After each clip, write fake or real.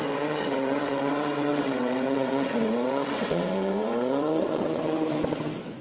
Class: fake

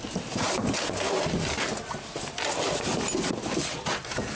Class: real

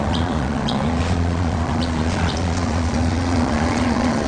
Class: fake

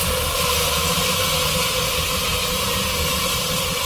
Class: real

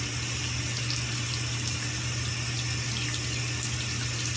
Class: real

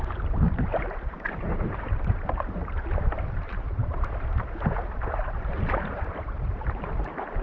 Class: fake